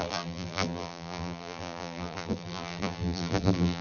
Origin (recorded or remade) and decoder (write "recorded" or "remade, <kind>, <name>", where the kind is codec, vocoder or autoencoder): remade, vocoder, BigVGAN v2